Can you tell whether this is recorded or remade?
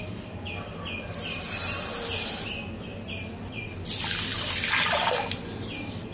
recorded